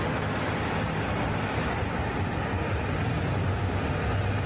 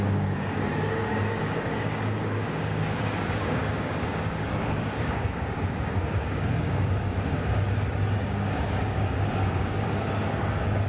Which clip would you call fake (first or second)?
second